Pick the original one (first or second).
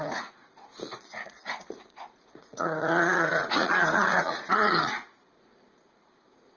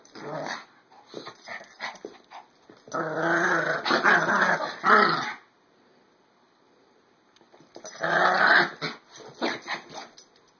second